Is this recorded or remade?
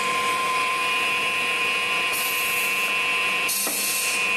remade